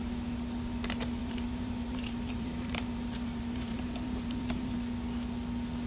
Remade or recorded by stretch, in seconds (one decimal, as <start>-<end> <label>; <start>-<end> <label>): 0.0-1.2 recorded; 1.2-4.7 remade; 4.7-5.9 recorded